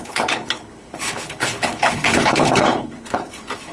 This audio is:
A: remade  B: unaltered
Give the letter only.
A